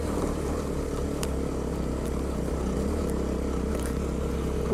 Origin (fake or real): real